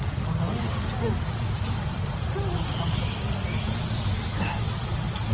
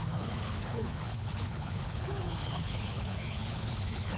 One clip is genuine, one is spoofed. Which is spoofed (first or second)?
second